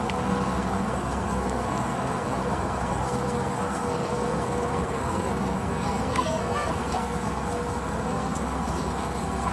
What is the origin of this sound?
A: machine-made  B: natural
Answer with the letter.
A